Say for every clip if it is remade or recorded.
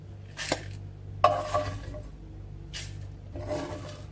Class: recorded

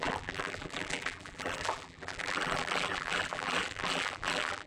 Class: remade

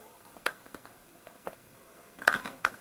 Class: remade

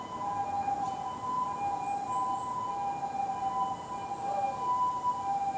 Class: recorded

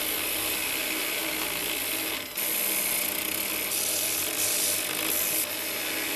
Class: recorded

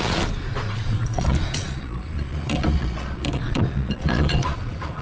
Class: remade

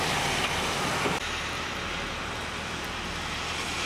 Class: recorded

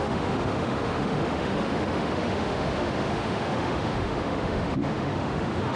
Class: remade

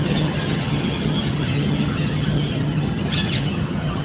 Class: remade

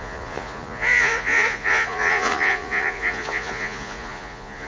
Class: remade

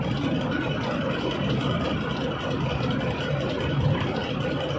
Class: remade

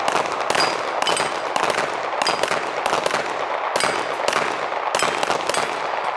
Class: recorded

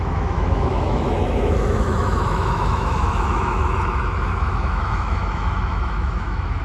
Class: remade